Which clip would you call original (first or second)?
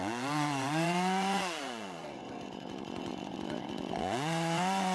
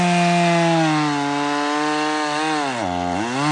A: second